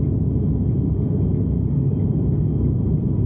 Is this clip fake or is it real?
real